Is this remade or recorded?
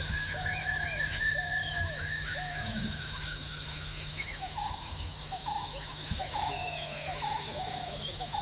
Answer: remade